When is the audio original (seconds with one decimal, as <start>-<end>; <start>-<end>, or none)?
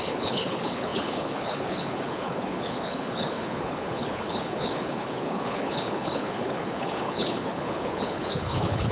none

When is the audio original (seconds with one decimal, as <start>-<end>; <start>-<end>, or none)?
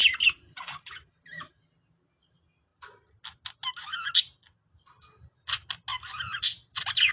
1.5-5.9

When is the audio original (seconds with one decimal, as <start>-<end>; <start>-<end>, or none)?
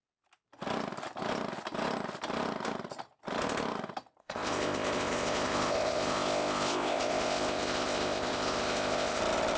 0.0-4.2; 9.2-9.6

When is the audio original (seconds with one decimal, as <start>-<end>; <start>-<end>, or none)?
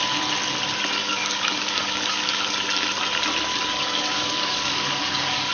0.0-1.0; 2.5-3.5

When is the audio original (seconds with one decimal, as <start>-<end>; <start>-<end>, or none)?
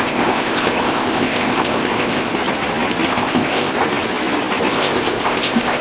2.3-3.1; 3.7-4.7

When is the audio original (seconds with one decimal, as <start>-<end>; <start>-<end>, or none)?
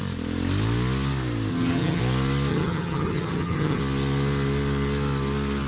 0.0-1.5; 2.0-2.5; 3.8-5.7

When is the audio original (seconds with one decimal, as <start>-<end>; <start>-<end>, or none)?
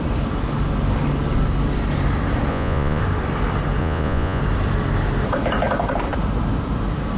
0.0-2.5; 3.0-3.8; 4.4-7.2